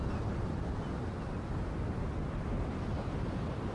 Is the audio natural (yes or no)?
yes